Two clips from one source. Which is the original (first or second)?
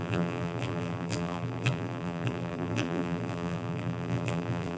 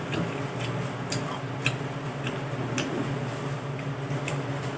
second